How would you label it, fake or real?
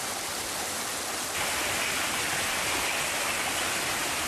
real